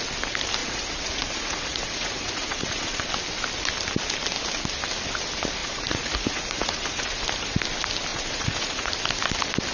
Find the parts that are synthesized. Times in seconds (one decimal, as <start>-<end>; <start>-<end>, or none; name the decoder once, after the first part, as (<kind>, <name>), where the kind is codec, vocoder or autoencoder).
0.6-3.0 (vocoder, Vocos); 5.6-7.2; 8.1-8.9